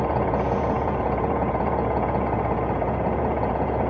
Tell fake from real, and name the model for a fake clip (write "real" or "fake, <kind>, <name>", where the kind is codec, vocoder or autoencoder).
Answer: fake, vocoder, Vocos